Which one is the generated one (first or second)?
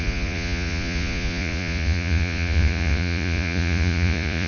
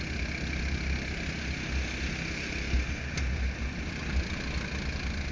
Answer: first